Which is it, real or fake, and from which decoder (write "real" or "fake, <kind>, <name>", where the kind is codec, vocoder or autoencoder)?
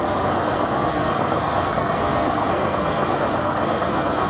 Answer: fake, codec, SNAC